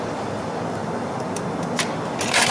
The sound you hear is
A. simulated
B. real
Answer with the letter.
B